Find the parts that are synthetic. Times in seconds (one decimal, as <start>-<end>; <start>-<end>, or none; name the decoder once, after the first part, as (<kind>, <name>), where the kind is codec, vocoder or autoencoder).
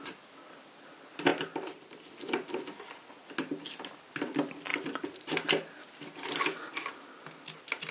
1.3-2.1 (vocoder, BigVGAN v2)